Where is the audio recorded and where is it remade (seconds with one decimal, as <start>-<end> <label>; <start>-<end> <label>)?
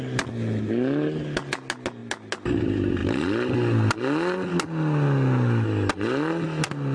0.0-6.9 recorded